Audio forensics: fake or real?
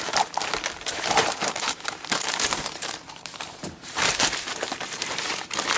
fake